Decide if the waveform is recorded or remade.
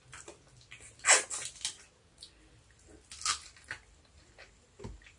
recorded